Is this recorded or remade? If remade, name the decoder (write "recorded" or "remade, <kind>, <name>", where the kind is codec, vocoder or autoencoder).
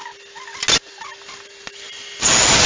recorded